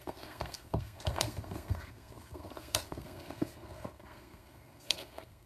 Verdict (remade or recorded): remade